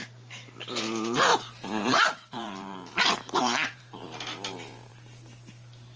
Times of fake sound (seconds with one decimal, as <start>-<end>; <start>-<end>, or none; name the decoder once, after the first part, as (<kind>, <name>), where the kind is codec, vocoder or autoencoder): 1.3-4.9 (vocoder, BigVGAN v2)

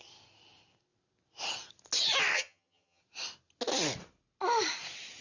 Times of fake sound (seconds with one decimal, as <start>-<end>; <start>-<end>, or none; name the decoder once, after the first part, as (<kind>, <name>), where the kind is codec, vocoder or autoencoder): 2.3-3.0 (vocoder, HiFi-GAN)

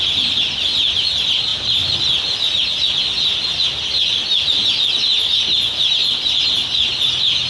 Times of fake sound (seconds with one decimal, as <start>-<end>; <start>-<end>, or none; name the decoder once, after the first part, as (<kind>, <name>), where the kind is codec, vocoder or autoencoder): none

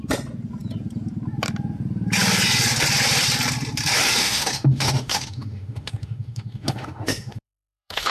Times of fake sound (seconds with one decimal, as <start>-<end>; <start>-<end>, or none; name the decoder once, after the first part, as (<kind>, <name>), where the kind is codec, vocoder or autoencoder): 4.2-8.1 (autoencoder, DAC-VAE)

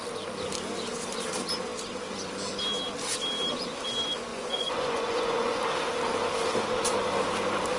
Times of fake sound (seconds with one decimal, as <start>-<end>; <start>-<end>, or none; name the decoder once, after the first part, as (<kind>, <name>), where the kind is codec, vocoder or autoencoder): 4.3-5.6 (vocoder, Vocos)

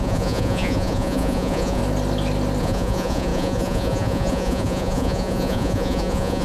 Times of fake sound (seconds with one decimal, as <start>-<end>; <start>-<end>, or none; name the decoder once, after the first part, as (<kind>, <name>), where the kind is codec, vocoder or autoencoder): 0.0-1.8 (vocoder, Vocos); 2.6-6.4

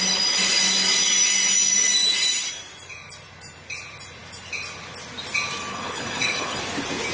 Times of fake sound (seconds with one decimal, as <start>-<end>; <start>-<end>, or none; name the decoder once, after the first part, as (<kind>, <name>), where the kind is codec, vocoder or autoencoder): 5.7-6.6 (codec, HILCodec)

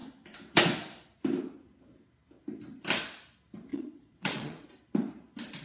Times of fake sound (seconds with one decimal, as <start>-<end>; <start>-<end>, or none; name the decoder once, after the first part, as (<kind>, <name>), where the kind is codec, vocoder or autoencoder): 3.7-4.7 (vocoder, Vocos)